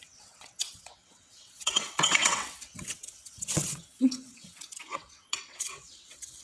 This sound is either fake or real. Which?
fake